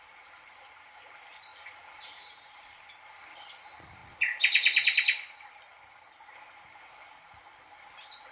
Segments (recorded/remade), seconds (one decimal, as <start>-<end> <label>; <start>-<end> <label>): 0.0-8.3 recorded